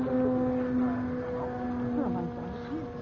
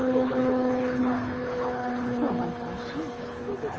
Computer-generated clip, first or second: second